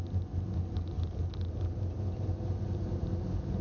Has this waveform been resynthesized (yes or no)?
no